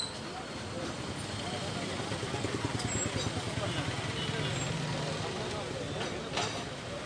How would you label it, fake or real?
real